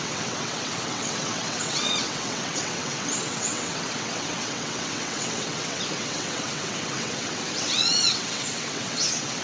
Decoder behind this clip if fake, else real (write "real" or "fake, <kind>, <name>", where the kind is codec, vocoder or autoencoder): fake, vocoder, WaveNeXt